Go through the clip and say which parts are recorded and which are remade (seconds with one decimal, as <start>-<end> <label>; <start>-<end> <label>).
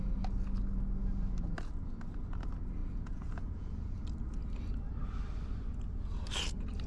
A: 0.0-2.8 recorded; 2.8-4.0 remade; 4.0-6.9 recorded